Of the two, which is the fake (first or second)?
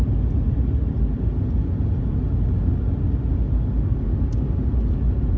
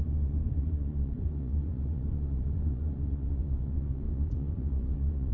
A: second